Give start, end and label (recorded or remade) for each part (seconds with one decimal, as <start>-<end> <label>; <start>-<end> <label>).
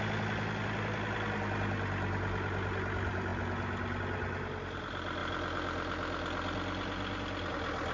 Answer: 0.0-7.9 recorded